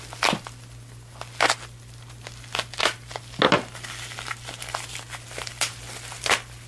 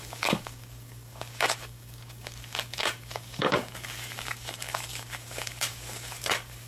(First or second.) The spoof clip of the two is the second